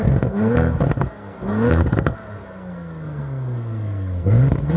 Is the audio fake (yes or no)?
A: yes